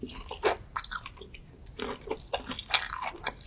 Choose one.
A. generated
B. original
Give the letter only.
B